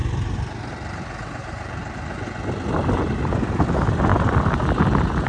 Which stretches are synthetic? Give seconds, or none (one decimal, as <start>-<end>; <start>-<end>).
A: 1.4-2.0